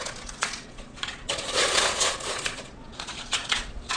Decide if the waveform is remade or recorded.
remade